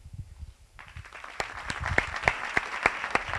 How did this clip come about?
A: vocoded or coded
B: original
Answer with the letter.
A